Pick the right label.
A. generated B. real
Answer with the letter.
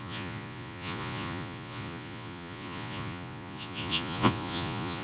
A